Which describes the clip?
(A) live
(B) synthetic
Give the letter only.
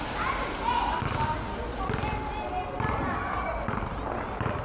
A